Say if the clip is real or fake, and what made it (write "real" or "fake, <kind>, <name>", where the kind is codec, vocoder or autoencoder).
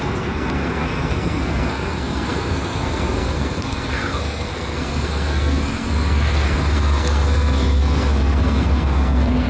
fake, codec, SNAC